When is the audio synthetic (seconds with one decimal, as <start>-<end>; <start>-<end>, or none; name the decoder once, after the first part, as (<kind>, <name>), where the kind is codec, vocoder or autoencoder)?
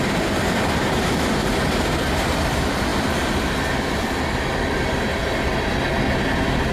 none